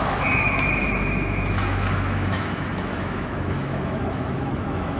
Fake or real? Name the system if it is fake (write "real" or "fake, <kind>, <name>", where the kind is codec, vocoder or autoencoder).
fake, autoencoder, DAC-VAE